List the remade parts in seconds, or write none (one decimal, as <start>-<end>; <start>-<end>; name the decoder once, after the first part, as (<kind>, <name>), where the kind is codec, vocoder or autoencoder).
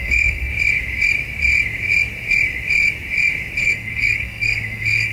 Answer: 0.0-0.5 (codec, SNAC); 3.6-5.1